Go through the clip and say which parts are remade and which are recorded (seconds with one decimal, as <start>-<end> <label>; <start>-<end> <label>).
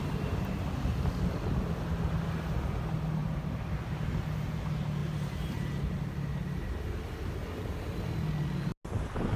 0.0-3.2 recorded; 3.2-4.1 remade; 4.1-5.0 recorded; 5.0-5.7 remade; 5.7-9.4 recorded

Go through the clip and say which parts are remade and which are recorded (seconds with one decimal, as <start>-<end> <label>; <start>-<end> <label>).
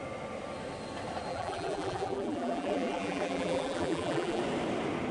0.0-1.3 recorded; 1.3-4.4 remade; 4.4-5.1 recorded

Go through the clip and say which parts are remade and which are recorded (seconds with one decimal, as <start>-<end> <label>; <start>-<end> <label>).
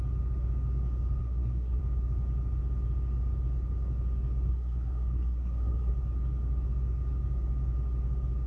0.0-1.2 recorded; 1.2-1.8 remade; 1.8-4.5 recorded; 4.5-5.9 remade; 5.9-8.5 recorded